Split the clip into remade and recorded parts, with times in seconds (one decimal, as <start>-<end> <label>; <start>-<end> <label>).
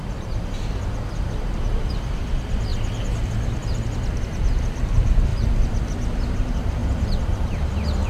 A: 0.0-2.7 remade; 2.7-3.2 recorded; 3.2-5.3 remade; 5.3-5.9 recorded; 5.9-8.1 remade